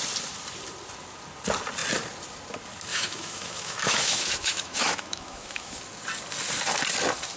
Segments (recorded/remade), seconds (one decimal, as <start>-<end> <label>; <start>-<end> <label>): 0.0-2.9 recorded; 2.9-5.8 remade; 5.8-7.4 recorded